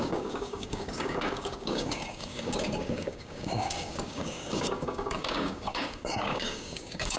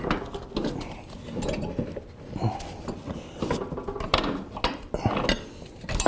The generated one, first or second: first